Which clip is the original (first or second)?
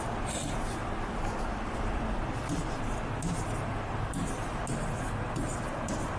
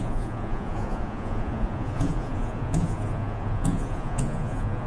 first